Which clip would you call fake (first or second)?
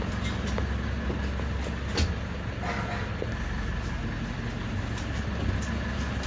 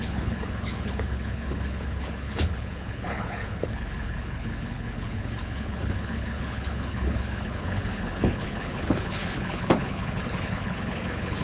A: second